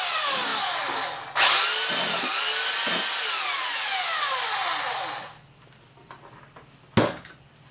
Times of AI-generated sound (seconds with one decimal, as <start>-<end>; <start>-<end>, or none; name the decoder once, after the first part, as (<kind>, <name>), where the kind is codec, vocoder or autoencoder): none